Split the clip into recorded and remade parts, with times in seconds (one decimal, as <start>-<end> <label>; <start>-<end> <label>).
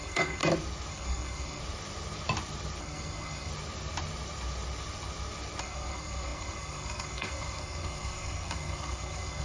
0.0-0.4 remade; 0.4-0.9 recorded; 0.9-1.6 remade; 1.6-2.8 recorded; 2.8-3.5 remade; 3.5-5.6 recorded; 5.6-9.4 remade